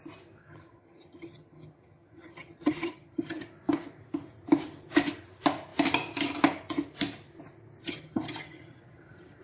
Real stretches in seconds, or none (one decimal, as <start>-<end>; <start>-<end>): 0.0-0.4; 3.4-7.8